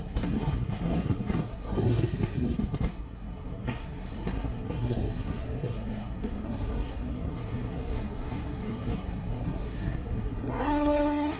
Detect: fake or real fake